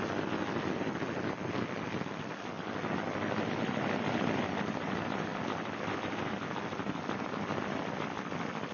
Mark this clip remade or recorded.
recorded